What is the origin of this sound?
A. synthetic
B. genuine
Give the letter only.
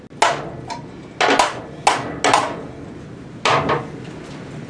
B